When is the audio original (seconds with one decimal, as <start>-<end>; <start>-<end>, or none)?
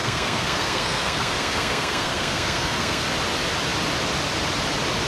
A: 3.1-5.1